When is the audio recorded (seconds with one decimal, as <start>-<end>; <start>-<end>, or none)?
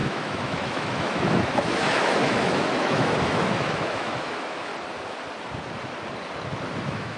4.7-6.8